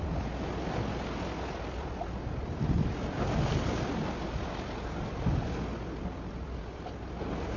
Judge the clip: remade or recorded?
recorded